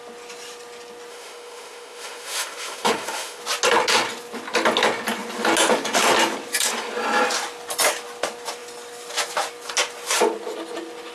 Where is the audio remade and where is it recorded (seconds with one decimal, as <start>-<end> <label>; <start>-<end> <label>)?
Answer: 0.0-1.1 recorded; 1.1-3.4 remade; 3.4-11.1 recorded